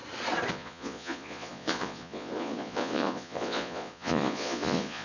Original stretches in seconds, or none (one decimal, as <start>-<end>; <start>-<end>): 0.0-0.5